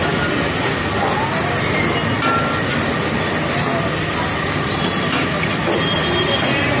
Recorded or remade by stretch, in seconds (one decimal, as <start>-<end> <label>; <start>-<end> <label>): 0.0-6.8 recorded